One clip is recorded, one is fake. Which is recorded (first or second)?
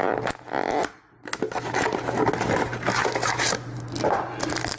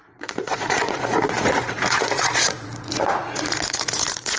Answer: first